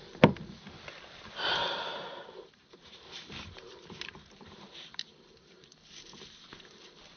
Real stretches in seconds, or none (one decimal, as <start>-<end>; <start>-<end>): 0.0-1.6; 5.9-7.2